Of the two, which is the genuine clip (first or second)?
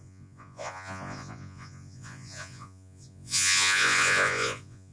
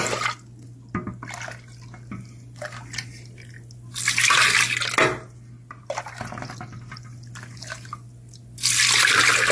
second